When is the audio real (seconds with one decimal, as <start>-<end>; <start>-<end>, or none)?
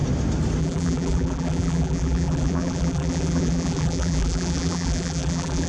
0.0-0.6